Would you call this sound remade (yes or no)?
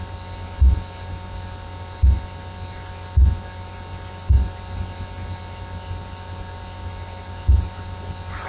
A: no